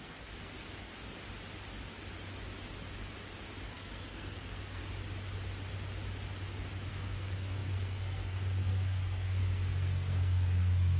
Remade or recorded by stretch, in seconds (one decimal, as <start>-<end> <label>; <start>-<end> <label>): 0.0-0.9 remade; 0.9-3.7 recorded; 3.7-4.8 remade; 4.8-6.9 recorded; 6.9-11.0 remade

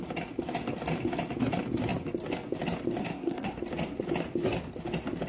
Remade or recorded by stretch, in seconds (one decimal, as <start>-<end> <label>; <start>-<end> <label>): 0.0-3.0 recorded; 3.0-3.6 remade; 3.6-5.3 recorded

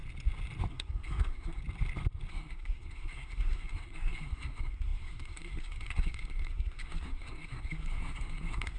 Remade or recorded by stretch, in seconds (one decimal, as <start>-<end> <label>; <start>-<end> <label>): 0.0-0.7 recorded; 0.7-1.6 remade; 1.6-2.3 recorded; 2.3-8.8 remade

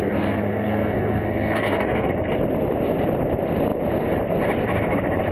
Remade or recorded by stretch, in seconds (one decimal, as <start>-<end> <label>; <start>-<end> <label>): 0.0-2.1 remade; 2.1-5.3 recorded

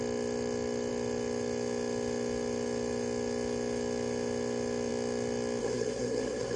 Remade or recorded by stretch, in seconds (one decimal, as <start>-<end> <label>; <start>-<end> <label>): 0.0-5.6 recorded; 5.6-6.6 remade

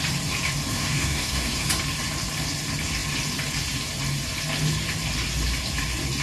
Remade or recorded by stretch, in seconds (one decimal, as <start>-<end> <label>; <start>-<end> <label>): 0.0-0.7 recorded; 0.7-1.7 remade; 1.7-6.2 recorded

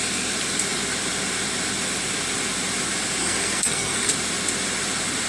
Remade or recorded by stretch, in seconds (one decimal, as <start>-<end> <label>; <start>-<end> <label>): 0.0-3.2 recorded; 3.2-4.1 remade; 4.1-5.3 recorded